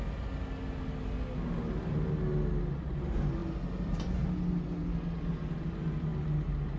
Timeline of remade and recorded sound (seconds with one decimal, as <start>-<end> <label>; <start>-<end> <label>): 0.0-6.8 recorded